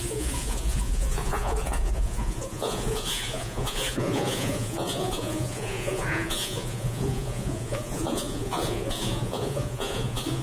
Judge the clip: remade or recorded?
remade